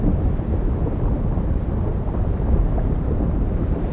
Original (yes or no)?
no